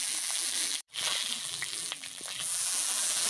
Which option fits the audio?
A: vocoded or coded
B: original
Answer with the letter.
A